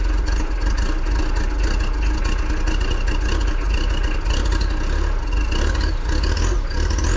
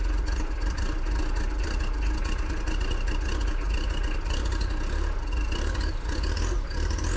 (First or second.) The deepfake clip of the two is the second